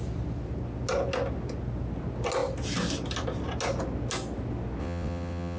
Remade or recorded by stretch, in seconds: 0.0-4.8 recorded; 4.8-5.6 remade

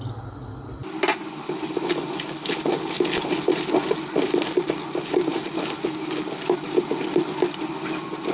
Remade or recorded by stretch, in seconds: 0.0-8.3 recorded

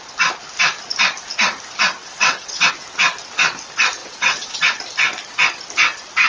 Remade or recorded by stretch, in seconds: 0.0-2.0 recorded; 2.0-2.7 remade; 2.7-4.0 recorded; 4.0-4.8 remade; 4.8-6.3 recorded

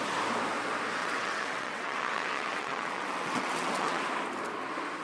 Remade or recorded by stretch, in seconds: 0.0-1.0 recorded; 1.0-4.0 remade; 4.0-5.0 recorded

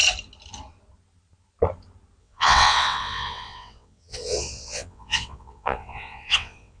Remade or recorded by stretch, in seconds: 0.0-2.2 recorded; 2.2-6.8 remade

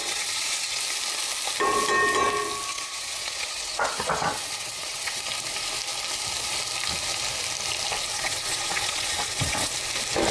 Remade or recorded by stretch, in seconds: 0.0-0.8 remade; 0.8-2.7 recorded; 2.7-5.2 remade; 5.2-8.1 recorded; 8.1-9.7 remade; 9.7-10.3 recorded